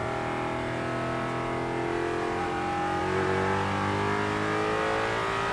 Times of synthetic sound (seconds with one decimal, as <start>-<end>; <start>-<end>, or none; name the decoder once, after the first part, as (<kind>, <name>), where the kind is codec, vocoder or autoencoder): none